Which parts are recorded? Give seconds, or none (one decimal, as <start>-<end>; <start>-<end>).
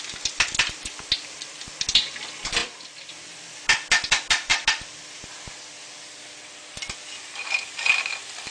0.0-2.6; 3.1-8.5